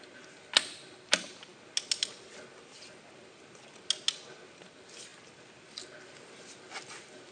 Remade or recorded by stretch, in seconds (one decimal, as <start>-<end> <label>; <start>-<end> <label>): 0.0-7.3 recorded